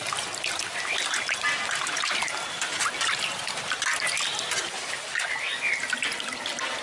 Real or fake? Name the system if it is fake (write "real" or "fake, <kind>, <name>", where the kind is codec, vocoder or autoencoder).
real